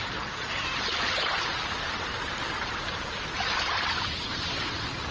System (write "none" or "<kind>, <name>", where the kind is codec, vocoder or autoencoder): vocoder, BigVGAN v2